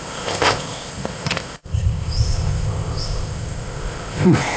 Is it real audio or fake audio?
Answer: fake